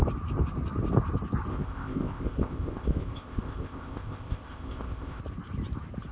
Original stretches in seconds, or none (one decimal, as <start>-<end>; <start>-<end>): 0.0-1.5; 5.2-6.1